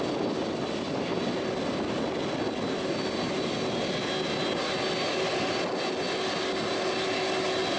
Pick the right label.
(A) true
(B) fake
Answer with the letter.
A